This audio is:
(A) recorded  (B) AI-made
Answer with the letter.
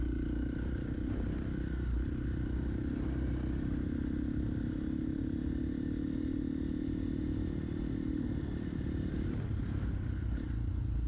A